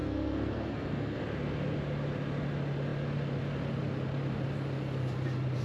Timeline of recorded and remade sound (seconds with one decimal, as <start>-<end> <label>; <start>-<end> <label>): 0.0-1.2 remade; 1.2-5.6 recorded